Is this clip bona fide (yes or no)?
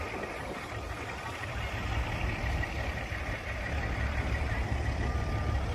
yes